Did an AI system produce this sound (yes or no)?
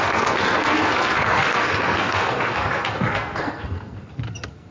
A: yes